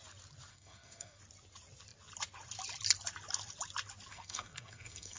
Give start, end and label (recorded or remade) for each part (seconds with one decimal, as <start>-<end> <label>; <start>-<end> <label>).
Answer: 0.0-0.5 recorded; 0.5-1.2 remade; 1.2-4.1 recorded; 4.1-5.2 remade